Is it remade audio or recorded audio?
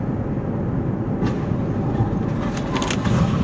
recorded